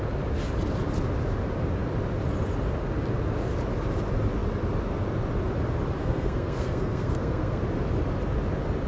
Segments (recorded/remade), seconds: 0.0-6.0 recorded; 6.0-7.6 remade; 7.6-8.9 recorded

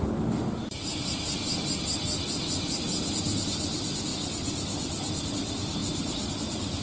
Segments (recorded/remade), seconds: 0.0-6.8 recorded

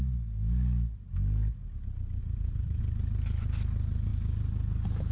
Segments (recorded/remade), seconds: 0.0-2.2 recorded; 2.2-2.8 remade; 2.8-5.1 recorded

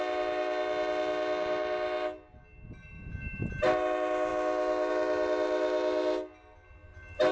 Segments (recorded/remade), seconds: 0.0-7.3 recorded